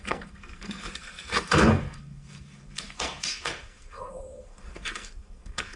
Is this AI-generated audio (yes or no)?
yes